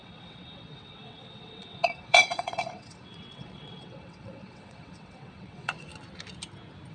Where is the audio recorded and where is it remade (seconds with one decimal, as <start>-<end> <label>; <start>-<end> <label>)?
0.0-5.9 remade; 5.9-6.9 recorded